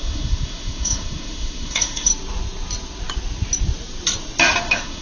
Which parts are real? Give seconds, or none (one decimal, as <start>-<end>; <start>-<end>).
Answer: 2.1-4.6